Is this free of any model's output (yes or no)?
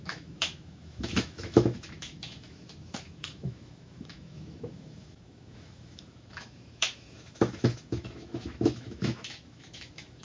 no